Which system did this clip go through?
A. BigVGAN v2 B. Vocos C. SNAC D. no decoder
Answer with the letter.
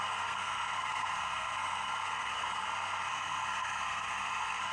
C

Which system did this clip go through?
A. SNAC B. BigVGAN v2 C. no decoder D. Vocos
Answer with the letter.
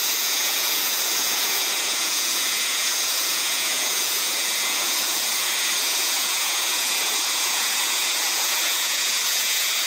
D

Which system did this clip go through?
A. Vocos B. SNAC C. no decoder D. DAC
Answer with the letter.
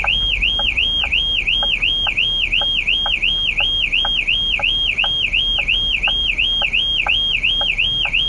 C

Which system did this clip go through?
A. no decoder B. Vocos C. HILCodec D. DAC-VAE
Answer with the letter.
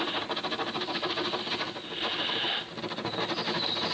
A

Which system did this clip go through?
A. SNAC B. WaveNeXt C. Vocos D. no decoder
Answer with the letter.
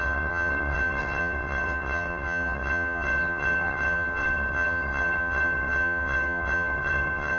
B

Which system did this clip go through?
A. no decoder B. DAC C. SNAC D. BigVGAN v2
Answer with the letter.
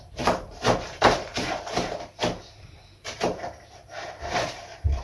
D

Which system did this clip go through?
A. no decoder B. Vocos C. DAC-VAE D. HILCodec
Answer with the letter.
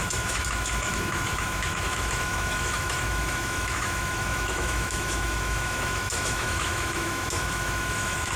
C